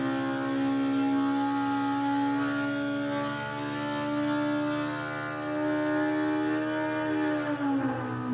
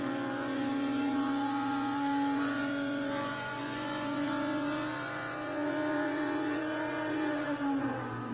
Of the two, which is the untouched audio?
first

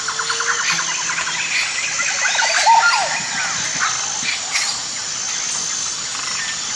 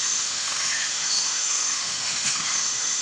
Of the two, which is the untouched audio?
first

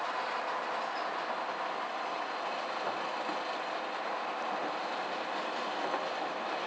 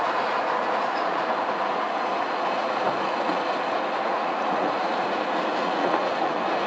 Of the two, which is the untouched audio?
first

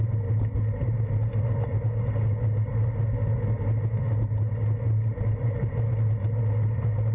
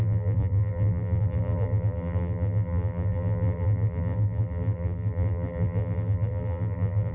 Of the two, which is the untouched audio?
first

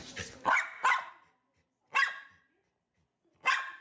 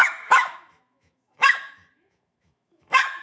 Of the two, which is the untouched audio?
first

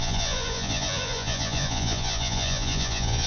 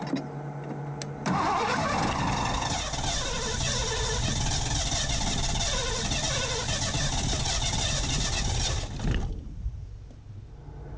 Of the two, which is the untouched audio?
second